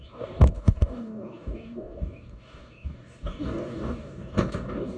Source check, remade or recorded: remade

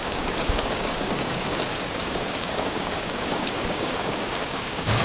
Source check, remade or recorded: remade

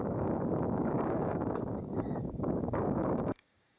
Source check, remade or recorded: remade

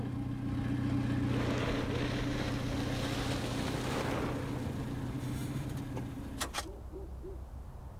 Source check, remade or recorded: recorded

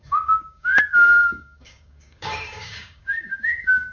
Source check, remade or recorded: remade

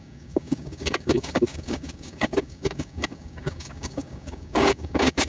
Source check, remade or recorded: remade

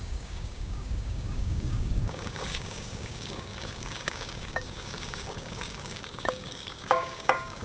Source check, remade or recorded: remade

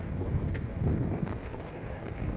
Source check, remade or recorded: remade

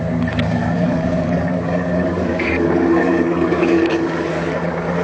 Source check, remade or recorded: remade